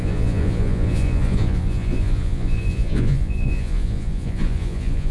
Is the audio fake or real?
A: fake